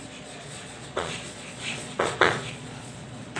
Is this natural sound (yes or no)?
no